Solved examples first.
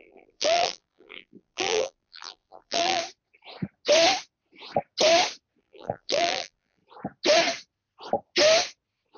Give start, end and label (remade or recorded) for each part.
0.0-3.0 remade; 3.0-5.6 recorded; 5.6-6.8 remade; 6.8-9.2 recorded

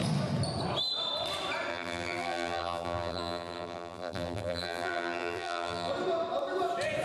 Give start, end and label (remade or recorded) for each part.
0.0-1.7 recorded; 1.7-5.9 remade; 5.9-7.0 recorded